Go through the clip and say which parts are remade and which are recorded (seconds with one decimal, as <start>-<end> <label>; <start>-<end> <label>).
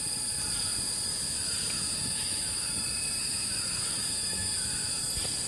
0.0-1.1 recorded; 1.1-2.7 remade; 2.7-3.2 recorded; 3.2-5.0 remade; 5.0-5.5 recorded